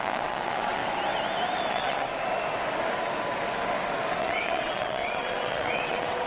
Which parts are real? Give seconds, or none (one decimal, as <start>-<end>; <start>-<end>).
0.8-1.7; 2.1-4.2